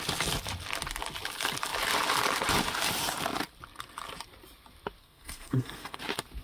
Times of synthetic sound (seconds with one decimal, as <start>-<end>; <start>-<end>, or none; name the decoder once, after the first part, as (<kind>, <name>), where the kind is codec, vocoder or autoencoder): 5.0-6.0 (codec, SNAC)